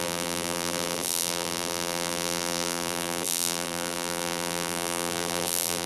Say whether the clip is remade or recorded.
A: remade